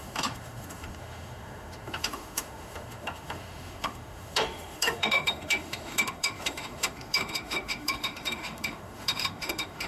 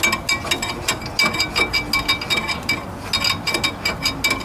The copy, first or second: first